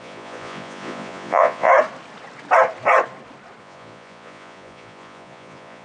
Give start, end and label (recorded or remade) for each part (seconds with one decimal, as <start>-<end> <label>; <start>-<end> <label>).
0.0-1.7 remade; 1.7-3.6 recorded; 3.6-5.8 remade